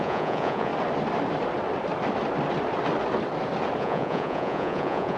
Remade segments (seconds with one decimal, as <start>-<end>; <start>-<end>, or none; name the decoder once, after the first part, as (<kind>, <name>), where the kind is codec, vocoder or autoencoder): 0.0-0.7 (vocoder, Vocos); 3.8-5.2